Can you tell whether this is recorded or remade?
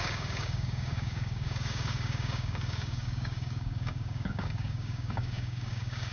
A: remade